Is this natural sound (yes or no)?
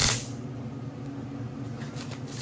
yes